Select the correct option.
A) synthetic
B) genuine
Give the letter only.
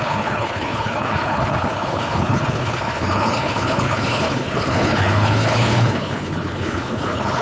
A